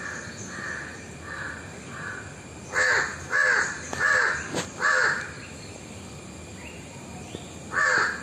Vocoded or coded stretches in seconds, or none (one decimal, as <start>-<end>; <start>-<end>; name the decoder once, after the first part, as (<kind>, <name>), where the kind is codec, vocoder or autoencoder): none